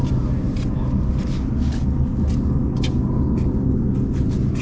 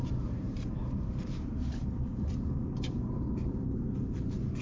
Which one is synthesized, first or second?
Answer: second